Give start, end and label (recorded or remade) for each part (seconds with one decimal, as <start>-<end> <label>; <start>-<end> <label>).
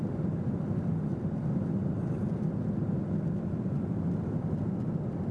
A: 0.0-5.3 recorded